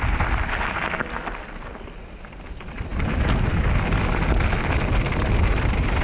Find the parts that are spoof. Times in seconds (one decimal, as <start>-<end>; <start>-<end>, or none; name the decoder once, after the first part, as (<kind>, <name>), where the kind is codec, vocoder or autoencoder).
none